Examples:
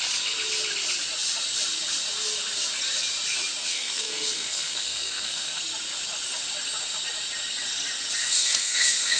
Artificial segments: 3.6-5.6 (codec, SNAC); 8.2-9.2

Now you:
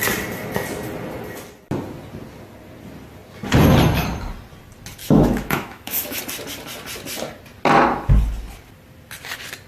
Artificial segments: 5.0-6.2 (autoencoder, DAC-VAE)

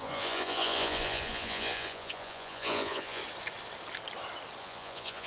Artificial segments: 0.0-3.2 (vocoder, Vocos); 4.6-5.3

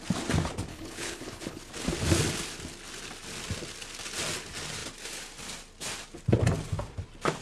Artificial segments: 0.7-1.7 (codec, HILCodec)

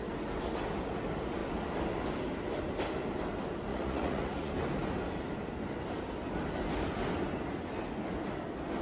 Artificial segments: 3.7-4.5 (vocoder, Vocos)

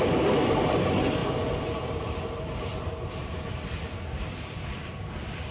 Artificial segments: none

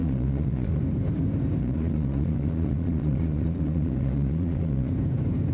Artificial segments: 0.0-0.8 (vocoder, Vocos); 1.6-4.9

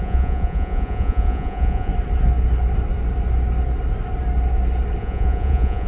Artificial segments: 0.0-1.9 (vocoder, Vocos); 5.0-5.9